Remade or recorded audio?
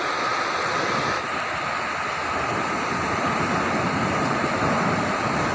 recorded